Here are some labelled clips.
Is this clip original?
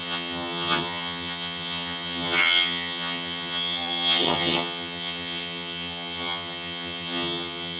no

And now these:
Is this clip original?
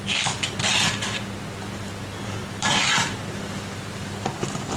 yes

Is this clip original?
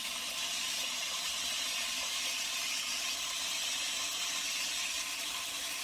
yes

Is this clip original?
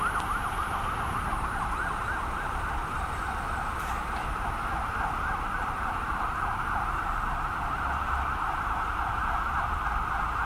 yes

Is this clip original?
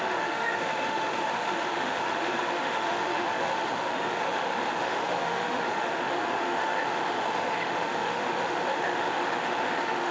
no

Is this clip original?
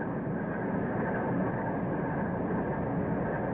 yes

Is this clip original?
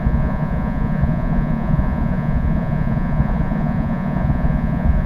no